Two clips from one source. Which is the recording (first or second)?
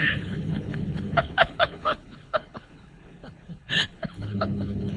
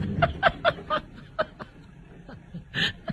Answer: second